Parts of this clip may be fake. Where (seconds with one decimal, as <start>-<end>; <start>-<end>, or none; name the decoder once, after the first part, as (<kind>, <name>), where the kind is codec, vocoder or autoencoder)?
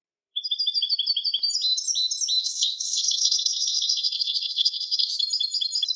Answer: 2.4-5.2 (codec, SNAC)